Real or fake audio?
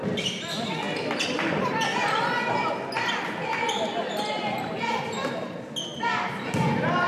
real